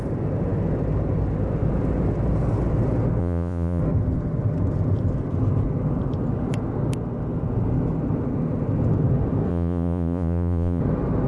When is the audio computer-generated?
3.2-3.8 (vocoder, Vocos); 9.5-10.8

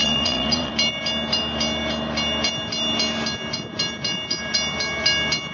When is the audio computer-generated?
0.0-0.7 (vocoder, Vocos)